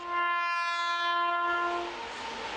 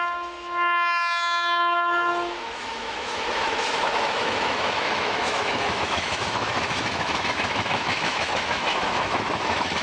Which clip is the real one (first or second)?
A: first